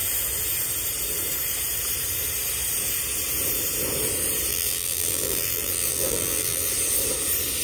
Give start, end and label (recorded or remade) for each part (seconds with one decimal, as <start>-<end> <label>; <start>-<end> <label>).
0.0-4.5 recorded; 4.5-6.7 remade; 6.7-7.6 recorded